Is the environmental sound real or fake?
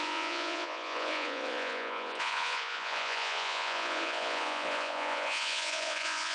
fake